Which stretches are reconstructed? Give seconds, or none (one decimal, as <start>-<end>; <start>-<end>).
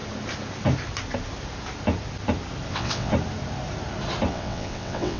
2.7-3.1; 4.3-5.2